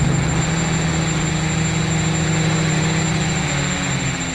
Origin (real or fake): real